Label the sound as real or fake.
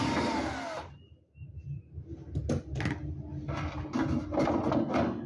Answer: real